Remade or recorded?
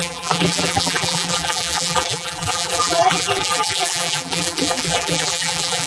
remade